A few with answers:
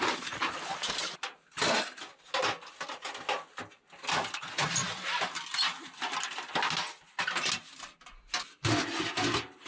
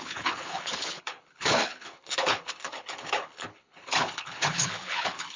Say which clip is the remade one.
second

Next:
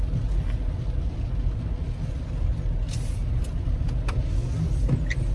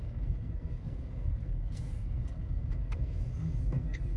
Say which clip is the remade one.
second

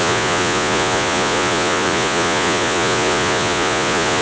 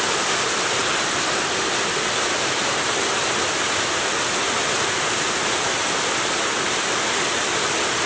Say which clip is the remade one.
first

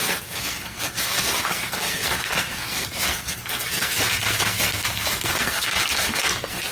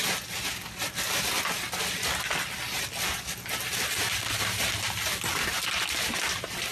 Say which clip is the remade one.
first